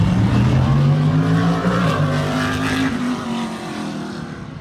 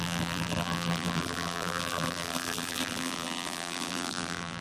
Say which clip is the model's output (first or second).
second